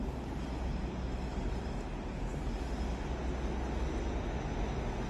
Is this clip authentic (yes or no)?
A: yes